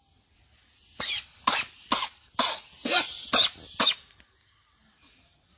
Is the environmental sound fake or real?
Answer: real